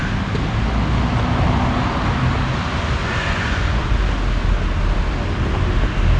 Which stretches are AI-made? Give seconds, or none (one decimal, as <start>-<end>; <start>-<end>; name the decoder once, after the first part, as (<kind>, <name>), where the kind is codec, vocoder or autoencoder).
3.0-3.8 (vocoder, Vocos)